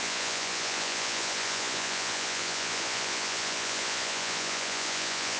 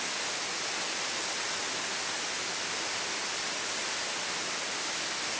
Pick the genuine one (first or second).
second